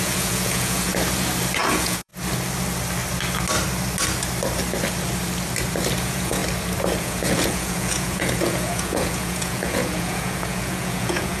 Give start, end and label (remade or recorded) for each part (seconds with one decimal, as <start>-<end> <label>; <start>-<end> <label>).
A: 0.0-0.9 remade; 0.9-1.7 recorded; 1.7-2.1 remade; 2.1-6.0 recorded; 6.0-6.4 remade; 6.4-7.0 recorded; 7.0-11.4 remade